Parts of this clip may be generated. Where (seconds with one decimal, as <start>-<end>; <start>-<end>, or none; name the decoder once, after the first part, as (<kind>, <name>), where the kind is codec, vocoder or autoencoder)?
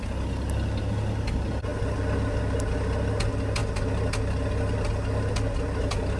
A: none